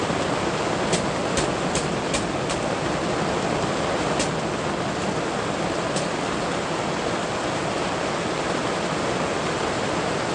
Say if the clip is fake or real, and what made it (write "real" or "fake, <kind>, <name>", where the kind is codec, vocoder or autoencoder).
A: real